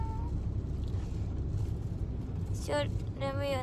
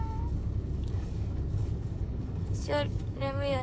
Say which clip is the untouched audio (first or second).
first